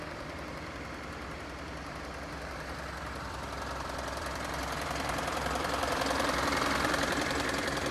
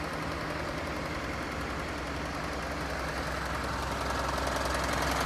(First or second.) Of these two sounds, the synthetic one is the first